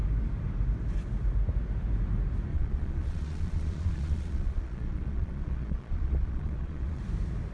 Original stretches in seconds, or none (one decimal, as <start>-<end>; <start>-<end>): 0.0-2.5; 7.0-7.5